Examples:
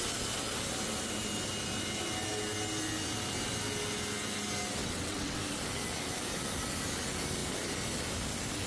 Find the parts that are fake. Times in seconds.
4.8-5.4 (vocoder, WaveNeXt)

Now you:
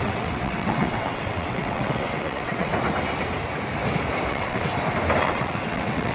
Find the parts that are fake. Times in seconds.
0.0-2.7 (vocoder, WaveNeXt); 4.3-4.7; 5.2-6.1